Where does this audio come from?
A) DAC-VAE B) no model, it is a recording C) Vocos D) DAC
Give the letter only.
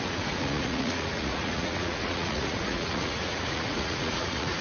C